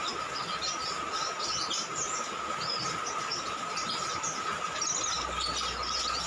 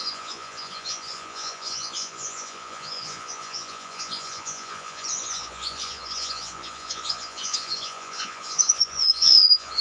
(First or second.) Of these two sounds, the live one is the first